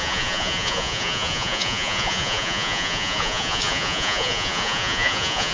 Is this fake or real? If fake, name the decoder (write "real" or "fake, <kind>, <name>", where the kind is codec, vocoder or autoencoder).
fake, vocoder, Vocos